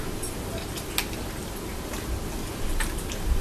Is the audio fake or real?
real